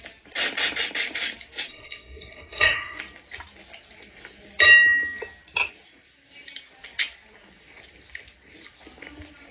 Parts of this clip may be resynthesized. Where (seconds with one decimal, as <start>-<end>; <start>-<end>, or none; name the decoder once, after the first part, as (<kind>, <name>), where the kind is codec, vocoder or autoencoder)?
1.7-3.0 (codec, SNAC)